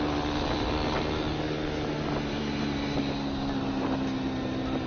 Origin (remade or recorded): recorded